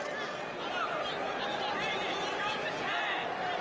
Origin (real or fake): real